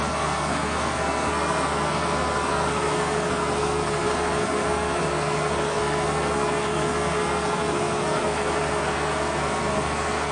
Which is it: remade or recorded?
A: remade